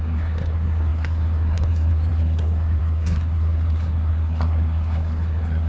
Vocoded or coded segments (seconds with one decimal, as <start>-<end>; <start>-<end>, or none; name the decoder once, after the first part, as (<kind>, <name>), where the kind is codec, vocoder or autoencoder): 0.0-5.7 (codec, SNAC)